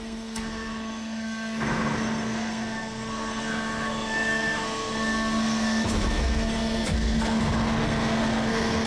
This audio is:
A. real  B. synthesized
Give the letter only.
B